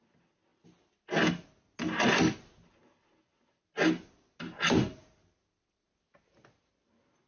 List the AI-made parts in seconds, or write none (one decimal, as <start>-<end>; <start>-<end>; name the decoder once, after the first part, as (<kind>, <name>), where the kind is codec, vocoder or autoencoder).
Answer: none